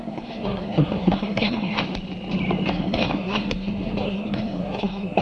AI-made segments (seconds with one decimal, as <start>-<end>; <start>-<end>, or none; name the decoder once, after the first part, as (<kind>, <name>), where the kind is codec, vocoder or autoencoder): 0.0-1.8 (codec, SNAC); 2.7-5.2

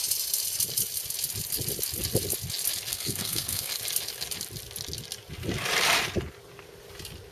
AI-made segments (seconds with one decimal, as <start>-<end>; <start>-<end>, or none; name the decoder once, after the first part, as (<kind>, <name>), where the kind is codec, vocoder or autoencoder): 2.9-3.7 (codec, SNAC)

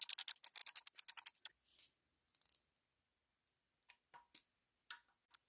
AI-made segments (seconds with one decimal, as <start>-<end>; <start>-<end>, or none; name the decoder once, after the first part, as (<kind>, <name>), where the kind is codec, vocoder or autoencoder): none

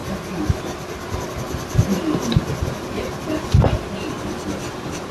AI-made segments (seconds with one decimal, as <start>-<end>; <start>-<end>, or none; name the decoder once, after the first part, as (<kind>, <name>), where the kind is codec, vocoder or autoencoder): none

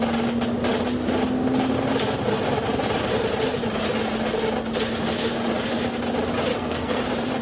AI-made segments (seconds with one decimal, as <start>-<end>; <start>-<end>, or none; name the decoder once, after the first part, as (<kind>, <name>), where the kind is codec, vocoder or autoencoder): 6.5-7.0 (codec, SNAC)